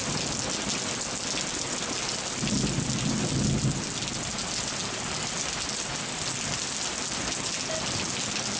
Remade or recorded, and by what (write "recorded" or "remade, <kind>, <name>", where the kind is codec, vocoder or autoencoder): recorded